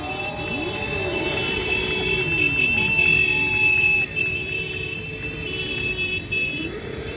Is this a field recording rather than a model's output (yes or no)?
no